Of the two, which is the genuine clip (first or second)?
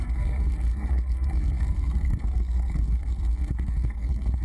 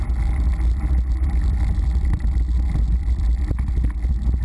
second